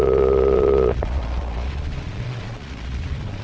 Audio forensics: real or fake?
fake